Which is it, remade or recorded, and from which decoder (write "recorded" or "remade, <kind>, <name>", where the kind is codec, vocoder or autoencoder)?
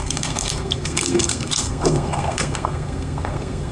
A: remade, codec, SNAC